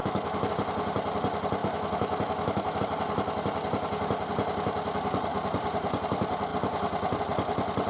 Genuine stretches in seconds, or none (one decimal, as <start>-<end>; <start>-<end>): 0.5-1.6; 2.8-7.9